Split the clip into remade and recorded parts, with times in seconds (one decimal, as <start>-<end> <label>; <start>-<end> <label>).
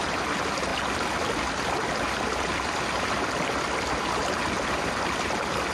0.0-5.7 recorded